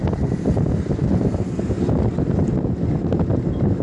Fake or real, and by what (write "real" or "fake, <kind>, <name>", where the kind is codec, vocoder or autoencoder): real